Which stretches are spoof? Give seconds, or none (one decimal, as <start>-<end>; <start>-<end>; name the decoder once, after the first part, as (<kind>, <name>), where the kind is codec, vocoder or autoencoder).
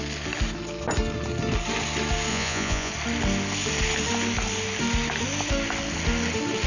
2.3-2.9 (vocoder, Vocos)